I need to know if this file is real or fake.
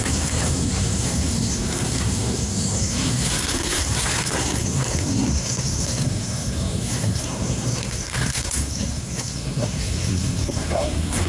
fake